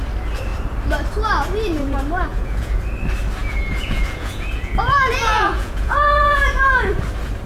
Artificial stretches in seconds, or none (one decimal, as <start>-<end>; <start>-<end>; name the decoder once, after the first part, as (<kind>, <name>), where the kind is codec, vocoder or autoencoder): 2.3-2.8 (vocoder, Vocos); 3.4-6.9